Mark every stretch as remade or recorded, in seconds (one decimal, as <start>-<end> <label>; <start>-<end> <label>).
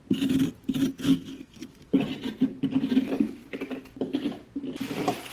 0.0-0.9 recorded; 0.9-2.0 remade; 2.0-5.3 recorded